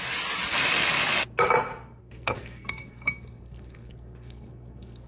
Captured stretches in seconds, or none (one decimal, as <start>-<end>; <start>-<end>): 0.0-2.0